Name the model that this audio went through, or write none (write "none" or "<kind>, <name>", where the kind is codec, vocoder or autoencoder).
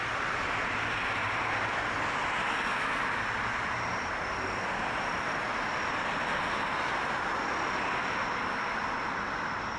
none